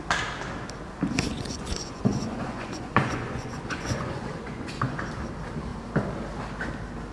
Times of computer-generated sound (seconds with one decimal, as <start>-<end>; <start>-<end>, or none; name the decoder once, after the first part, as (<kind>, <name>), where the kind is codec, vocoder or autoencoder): 1.3-5.0 (vocoder, Vocos)